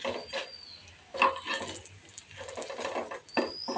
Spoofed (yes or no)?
no